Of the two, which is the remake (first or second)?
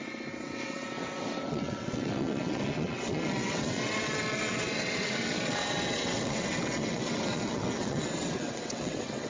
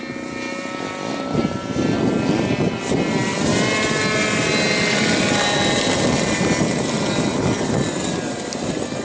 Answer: first